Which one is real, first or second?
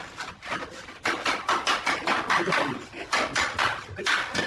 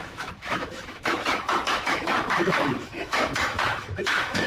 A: first